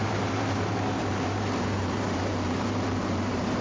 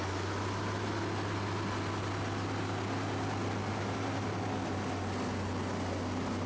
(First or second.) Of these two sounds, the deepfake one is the first